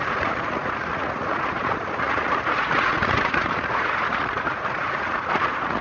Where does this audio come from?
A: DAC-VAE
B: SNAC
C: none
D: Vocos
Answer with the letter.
D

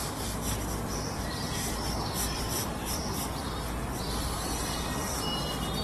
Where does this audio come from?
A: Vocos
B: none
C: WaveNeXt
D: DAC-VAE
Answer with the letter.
B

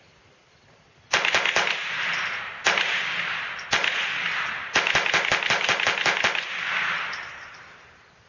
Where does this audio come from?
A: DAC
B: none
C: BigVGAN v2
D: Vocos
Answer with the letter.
B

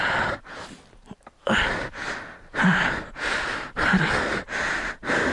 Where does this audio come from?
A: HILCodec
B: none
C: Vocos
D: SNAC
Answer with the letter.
B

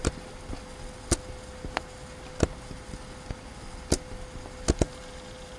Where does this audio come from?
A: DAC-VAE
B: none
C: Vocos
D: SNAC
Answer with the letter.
B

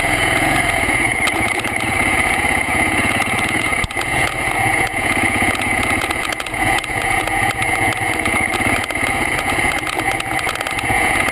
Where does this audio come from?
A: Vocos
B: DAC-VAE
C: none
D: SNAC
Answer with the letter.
A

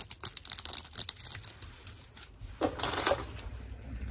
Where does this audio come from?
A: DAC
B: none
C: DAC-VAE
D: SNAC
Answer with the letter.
B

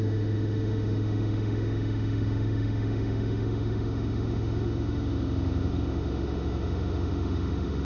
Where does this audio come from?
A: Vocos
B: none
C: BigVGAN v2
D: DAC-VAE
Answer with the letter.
D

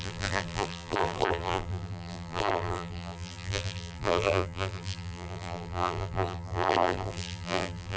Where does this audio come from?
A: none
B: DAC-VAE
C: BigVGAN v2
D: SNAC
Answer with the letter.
C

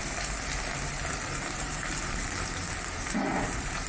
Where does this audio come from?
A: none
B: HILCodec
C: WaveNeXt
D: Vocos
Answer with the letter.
A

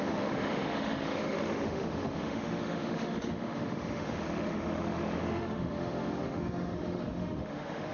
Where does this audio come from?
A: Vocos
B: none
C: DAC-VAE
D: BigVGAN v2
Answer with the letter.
C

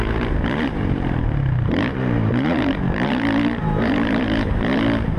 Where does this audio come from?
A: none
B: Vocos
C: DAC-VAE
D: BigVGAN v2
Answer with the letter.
D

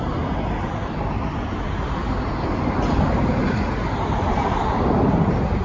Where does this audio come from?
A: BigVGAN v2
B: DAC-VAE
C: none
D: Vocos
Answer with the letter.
C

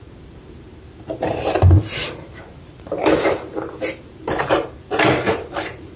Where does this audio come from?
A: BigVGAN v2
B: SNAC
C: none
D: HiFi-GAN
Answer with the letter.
A